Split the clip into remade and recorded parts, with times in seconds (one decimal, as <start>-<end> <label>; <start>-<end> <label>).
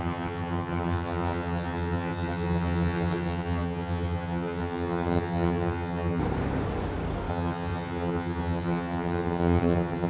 0.0-6.2 remade; 6.2-7.3 recorded; 7.3-10.1 remade